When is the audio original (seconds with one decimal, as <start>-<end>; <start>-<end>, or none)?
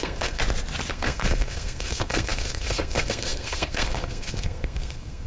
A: 0.4-0.9